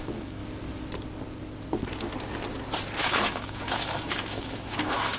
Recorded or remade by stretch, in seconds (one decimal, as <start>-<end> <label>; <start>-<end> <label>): 0.0-0.4 remade; 0.4-3.0 recorded; 3.0-5.2 remade